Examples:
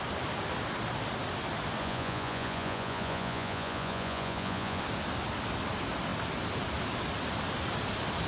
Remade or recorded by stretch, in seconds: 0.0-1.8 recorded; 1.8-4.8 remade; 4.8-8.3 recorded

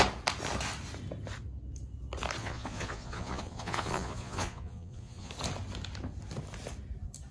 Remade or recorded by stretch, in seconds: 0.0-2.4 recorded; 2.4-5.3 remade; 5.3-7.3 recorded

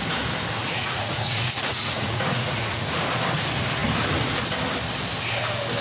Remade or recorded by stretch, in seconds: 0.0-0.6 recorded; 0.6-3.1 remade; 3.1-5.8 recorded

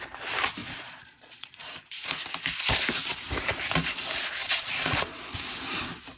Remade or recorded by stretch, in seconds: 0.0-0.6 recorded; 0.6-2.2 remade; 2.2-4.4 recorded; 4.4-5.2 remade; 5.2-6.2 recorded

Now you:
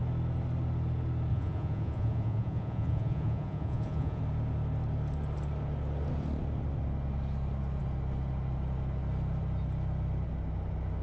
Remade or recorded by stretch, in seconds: 0.0-1.3 recorded; 1.3-4.2 remade; 4.2-11.0 recorded